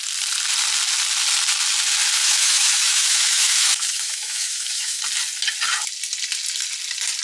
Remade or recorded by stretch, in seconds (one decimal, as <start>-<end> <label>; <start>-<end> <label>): 0.0-2.2 recorded; 2.2-5.0 remade; 5.0-7.2 recorded